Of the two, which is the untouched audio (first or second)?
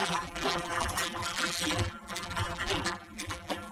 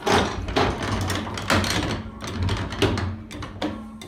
second